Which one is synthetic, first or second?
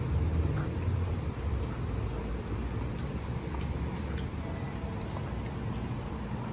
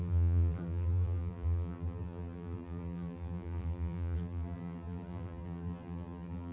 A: second